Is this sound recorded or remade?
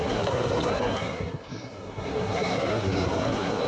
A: remade